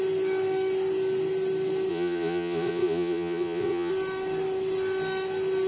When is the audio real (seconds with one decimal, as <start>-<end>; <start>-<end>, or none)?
0.0-1.9; 3.9-5.7